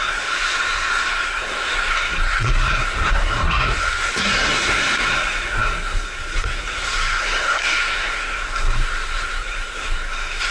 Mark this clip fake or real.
fake